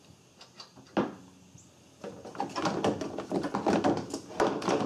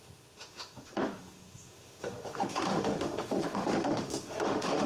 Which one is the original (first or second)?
first